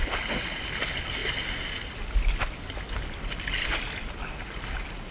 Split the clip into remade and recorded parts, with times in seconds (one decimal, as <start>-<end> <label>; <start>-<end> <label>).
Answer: 0.0-5.1 recorded